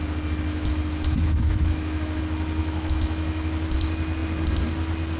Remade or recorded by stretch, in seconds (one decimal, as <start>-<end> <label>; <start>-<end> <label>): 0.0-0.5 recorded; 0.5-2.2 remade; 2.2-2.6 recorded; 2.6-3.5 remade; 3.5-5.2 recorded